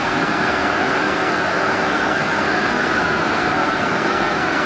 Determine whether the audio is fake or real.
fake